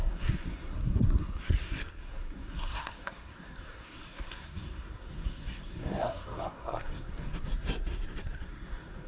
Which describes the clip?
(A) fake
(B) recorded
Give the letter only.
A